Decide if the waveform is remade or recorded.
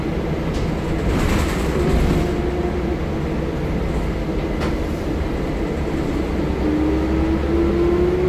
recorded